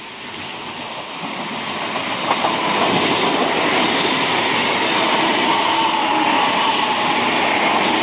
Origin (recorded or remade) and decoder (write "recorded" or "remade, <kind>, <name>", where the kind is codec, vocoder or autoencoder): recorded